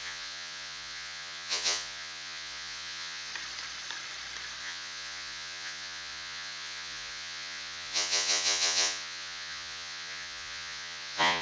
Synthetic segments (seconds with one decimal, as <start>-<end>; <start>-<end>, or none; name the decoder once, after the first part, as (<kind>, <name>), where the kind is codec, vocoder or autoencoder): 0.0-3.3 (vocoder, Vocos); 4.6-11.4